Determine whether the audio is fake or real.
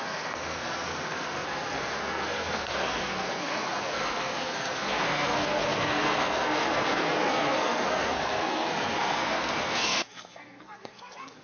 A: fake